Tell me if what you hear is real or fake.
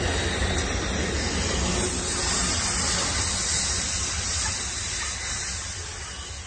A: real